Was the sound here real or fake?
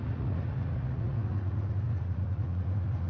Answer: fake